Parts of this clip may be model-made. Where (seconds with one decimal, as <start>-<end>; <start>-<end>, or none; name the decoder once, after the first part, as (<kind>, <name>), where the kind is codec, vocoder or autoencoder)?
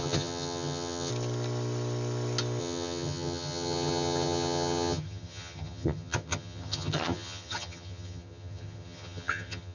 0.0-1.1 (vocoder, HiFi-GAN); 2.6-9.7